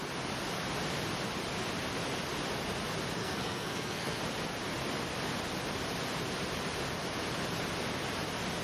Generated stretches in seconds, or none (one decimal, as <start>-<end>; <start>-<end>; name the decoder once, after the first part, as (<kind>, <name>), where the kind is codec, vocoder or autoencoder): 3.2-4.2 (codec, SNAC)